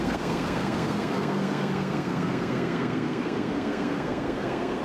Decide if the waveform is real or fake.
fake